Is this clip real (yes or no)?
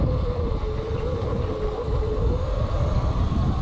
yes